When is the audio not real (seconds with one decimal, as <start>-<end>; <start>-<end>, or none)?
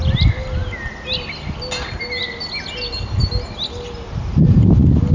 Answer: none